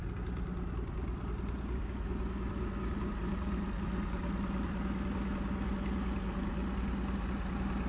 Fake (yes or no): no